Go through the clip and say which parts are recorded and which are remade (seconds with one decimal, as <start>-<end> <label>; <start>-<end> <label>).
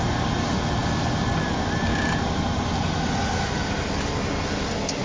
0.0-5.0 recorded